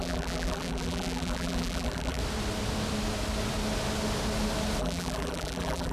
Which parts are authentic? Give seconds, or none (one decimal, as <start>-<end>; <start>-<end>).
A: 2.2-4.8